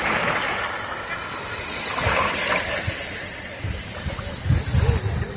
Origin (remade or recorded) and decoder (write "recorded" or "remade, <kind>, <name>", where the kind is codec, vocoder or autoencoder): recorded